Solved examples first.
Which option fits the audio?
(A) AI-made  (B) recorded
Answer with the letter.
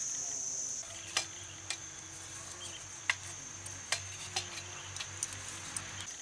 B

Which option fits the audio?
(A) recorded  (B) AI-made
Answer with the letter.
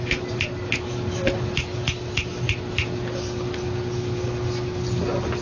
A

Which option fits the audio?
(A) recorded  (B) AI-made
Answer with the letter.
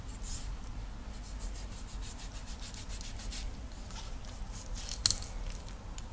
A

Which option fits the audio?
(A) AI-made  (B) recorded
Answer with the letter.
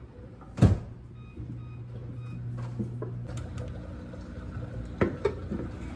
B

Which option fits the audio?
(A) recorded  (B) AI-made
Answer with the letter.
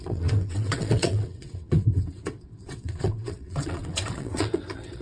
B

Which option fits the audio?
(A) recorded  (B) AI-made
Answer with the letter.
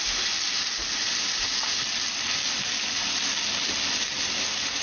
A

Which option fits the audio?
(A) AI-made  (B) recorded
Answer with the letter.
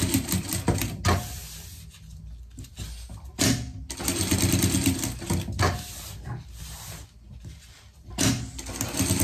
B